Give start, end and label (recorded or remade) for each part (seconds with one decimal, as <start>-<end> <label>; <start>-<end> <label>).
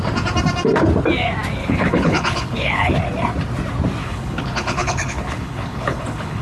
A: 0.0-1.6 recorded; 1.6-2.9 remade; 2.9-4.0 recorded; 4.0-6.4 remade